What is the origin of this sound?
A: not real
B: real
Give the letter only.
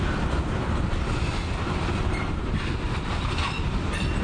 A